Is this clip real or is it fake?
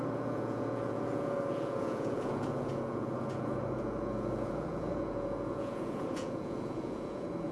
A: fake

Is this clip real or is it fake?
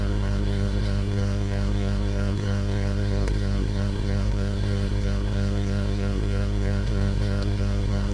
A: fake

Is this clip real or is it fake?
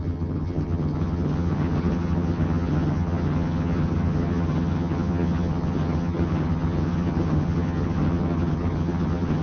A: fake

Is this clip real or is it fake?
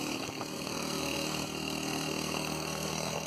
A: fake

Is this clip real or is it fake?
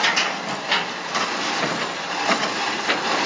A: real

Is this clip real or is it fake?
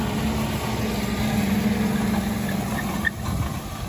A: real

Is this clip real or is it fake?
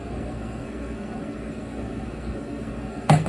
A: fake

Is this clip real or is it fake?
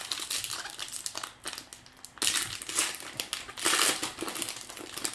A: real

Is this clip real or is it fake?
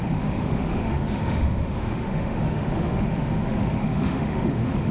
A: fake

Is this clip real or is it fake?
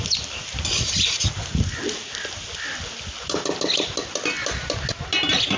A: real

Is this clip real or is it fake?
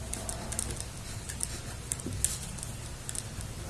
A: real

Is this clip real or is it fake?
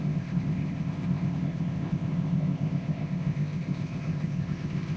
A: fake